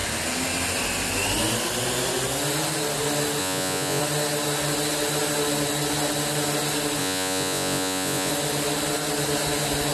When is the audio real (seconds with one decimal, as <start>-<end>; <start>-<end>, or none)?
0.0-3.4; 4.0-7.0; 8.3-9.9